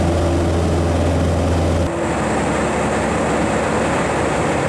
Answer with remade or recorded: recorded